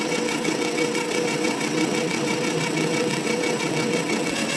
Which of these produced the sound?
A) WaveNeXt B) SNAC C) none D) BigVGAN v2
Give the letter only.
A